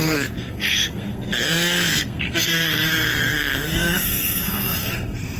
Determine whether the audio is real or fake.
fake